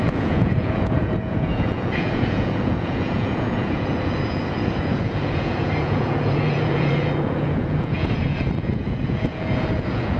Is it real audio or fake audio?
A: fake